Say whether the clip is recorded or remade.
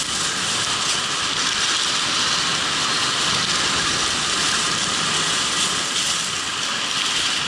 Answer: recorded